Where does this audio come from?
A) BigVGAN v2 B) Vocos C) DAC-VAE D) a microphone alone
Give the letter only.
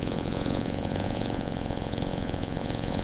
B